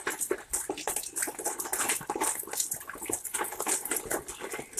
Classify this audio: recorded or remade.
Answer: remade